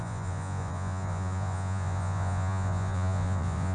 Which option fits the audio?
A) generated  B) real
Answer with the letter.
A